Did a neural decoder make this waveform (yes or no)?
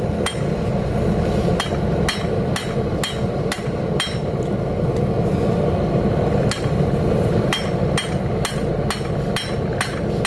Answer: no